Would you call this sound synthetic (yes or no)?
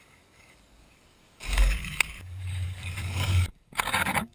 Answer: yes